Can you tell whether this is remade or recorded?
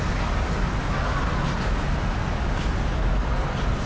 recorded